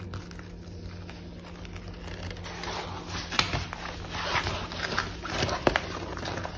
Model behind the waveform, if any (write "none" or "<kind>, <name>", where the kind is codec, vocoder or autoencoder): none